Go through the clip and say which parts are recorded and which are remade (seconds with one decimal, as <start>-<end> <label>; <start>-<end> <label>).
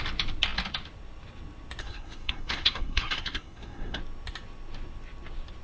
0.0-1.8 recorded; 1.8-4.0 remade; 4.0-5.6 recorded